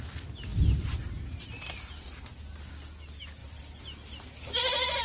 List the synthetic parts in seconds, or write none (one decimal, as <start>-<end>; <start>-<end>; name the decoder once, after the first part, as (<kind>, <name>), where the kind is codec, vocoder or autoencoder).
none